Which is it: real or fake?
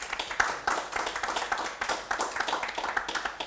real